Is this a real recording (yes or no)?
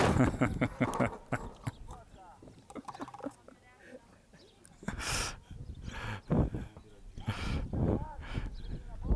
yes